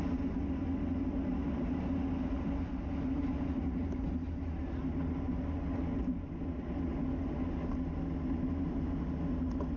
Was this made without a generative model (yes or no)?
yes